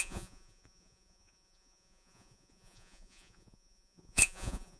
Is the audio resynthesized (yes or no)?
yes